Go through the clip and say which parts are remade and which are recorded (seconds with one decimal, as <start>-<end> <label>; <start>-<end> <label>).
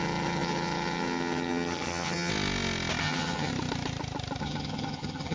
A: 0.0-2.3 remade; 2.3-3.0 recorded; 3.0-3.5 remade; 3.5-4.4 recorded; 4.4-5.3 remade